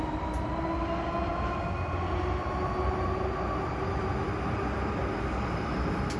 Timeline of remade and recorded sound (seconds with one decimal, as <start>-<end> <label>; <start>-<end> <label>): 0.0-6.2 recorded

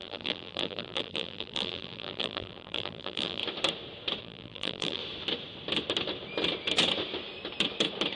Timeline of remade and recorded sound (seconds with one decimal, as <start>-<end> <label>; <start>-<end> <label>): 0.0-3.4 remade; 3.4-4.2 recorded; 4.2-5.0 remade; 5.0-8.2 recorded

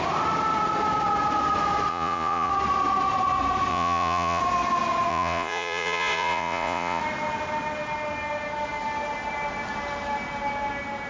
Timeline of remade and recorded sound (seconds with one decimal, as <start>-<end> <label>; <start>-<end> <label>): 0.0-1.9 recorded; 1.9-2.5 remade; 2.5-3.7 recorded; 3.7-4.4 remade; 4.4-5.1 recorded; 5.1-7.0 remade; 7.0-11.1 recorded

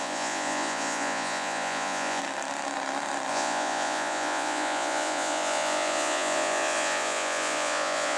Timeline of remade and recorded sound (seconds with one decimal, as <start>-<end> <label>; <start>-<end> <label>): 0.0-2.2 remade; 2.2-3.3 recorded; 3.3-8.2 remade

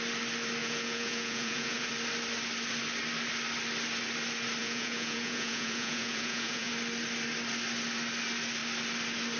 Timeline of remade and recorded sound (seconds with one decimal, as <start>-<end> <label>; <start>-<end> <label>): 0.0-0.6 recorded; 0.6-1.9 remade; 1.9-4.6 recorded; 4.6-6.7 remade; 6.7-9.4 recorded

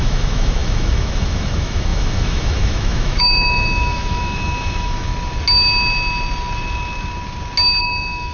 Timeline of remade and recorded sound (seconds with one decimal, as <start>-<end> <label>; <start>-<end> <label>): 0.0-5.1 remade; 5.1-7.8 recorded; 7.8-8.3 remade

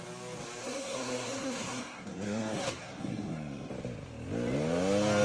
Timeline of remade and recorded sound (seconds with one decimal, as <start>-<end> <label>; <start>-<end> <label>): 0.0-0.6 recorded; 0.6-3.7 remade; 3.7-5.2 recorded